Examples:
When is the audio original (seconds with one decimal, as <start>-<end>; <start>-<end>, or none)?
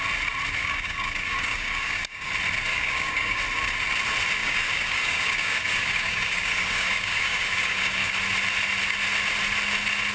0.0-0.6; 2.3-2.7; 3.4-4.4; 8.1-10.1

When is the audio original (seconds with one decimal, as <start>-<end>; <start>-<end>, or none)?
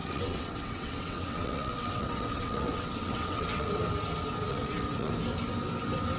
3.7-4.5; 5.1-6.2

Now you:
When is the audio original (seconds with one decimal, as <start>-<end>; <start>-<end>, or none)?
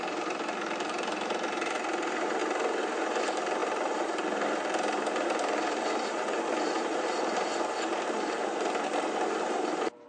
2.4-3.2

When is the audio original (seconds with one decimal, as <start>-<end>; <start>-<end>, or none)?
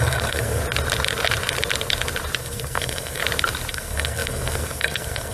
0.6-2.4; 3.2-3.7